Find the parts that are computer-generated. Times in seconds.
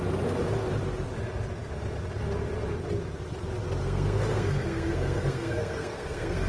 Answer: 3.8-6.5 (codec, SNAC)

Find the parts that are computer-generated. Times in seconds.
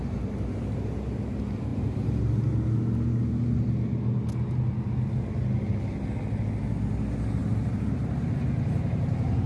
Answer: 1.7-2.2 (vocoder, BigVGAN v2); 7.4-8.4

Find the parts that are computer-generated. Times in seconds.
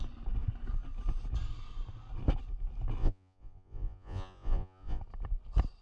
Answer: 3.0-5.0 (vocoder, Vocos)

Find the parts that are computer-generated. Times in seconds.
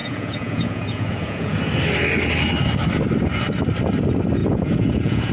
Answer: 0.0-1.6 (vocoder, Vocos); 4.4-5.3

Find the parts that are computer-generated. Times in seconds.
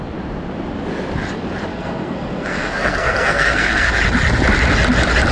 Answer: 1.7-3.9 (codec, SNAC)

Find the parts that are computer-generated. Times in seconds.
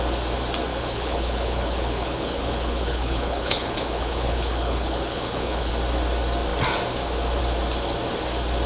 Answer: 0.7-5.7 (codec, HILCodec)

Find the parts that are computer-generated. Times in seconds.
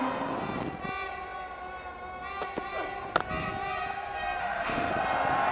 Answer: 4.4-4.9 (autoencoder, DAC-VAE)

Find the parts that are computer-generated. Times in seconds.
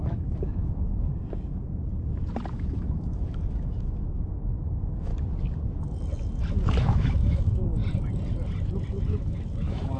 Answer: 0.0-1.1 (autoencoder, DAC-VAE); 2.5-5.1; 6.8-7.8; 8.9-10.0